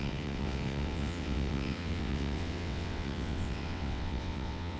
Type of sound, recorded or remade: remade